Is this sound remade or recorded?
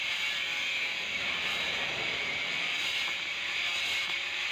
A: remade